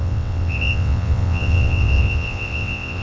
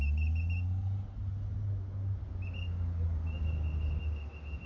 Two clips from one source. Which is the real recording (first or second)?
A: second